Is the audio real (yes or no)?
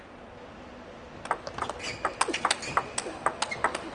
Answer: yes